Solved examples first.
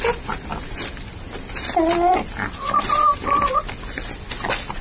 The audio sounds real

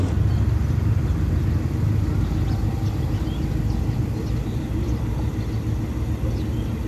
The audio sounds real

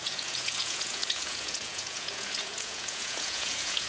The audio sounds fake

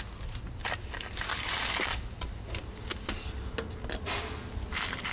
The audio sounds real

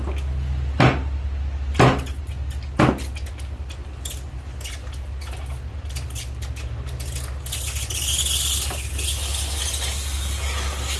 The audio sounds real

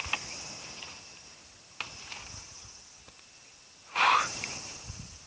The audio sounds real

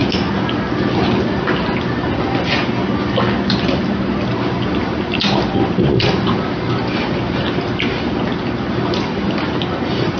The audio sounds real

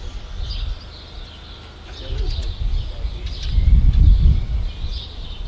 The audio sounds real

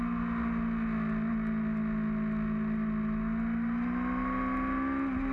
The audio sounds real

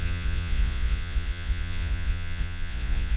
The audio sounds fake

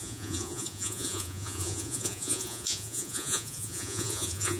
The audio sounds fake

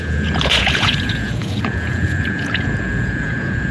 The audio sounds fake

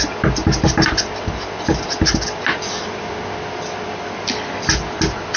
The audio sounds real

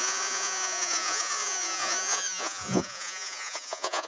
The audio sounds fake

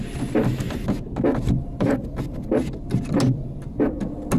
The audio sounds real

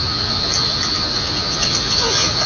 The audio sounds fake